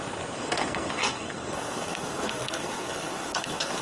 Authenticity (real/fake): fake